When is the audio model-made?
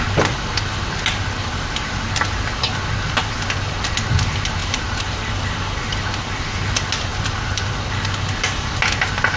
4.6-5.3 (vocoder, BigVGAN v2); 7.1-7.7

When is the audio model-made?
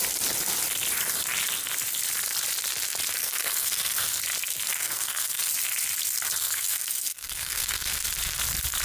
3.2-4.2 (codec, SNAC); 4.7-5.5; 6.4-8.0